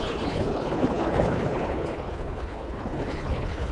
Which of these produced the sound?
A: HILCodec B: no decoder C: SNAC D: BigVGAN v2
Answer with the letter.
A